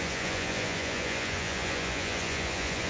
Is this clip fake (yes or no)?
yes